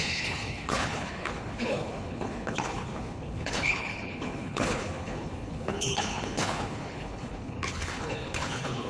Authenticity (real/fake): fake